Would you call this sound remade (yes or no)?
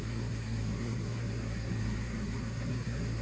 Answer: yes